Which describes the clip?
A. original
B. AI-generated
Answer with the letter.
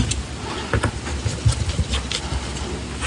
A